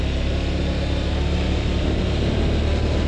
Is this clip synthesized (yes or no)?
no